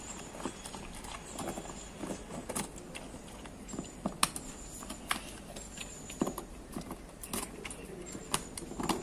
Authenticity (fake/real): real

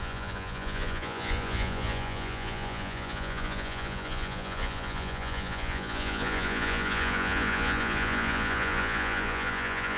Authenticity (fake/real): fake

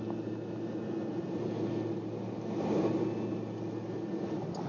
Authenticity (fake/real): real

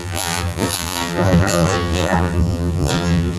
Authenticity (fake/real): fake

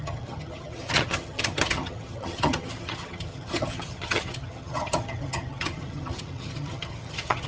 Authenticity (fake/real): fake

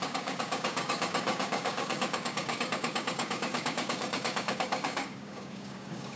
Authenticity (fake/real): fake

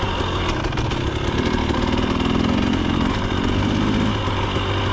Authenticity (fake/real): real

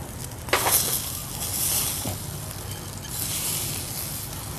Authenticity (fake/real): real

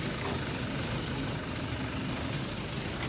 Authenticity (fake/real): fake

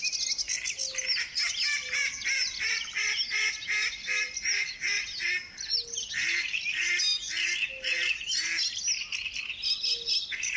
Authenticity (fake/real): real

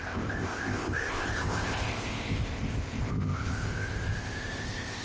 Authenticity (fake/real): fake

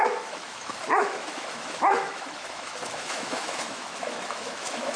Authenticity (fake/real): fake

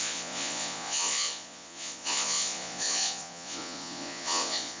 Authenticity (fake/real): fake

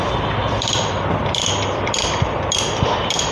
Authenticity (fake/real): fake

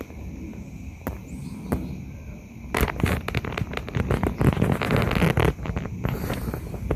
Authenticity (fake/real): real